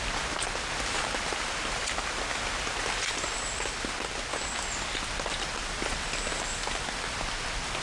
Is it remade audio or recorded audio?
recorded